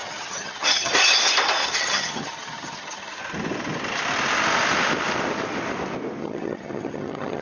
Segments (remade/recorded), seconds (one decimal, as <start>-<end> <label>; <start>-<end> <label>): 0.0-0.9 remade; 0.9-1.6 recorded; 1.6-3.2 remade; 3.2-6.2 recorded; 6.2-7.4 remade